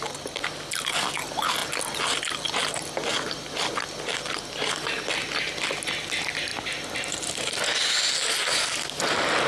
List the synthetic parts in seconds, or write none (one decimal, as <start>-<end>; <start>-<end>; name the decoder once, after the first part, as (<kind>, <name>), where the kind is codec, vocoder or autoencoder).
none